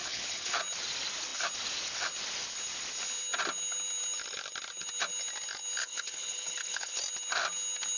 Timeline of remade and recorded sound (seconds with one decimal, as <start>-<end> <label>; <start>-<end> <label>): 0.0-0.6 remade; 0.6-5.8 recorded; 5.8-7.0 remade; 7.0-8.0 recorded